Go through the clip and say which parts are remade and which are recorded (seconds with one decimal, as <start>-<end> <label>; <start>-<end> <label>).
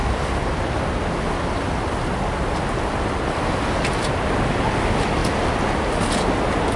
0.0-6.8 recorded